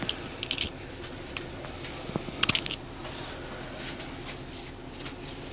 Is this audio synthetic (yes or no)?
no